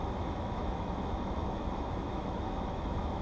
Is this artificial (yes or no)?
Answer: yes